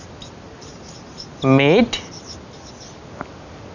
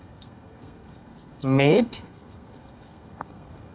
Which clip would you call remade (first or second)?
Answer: second